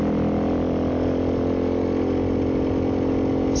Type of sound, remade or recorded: recorded